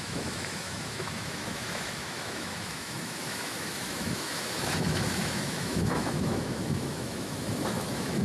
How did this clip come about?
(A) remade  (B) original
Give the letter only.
A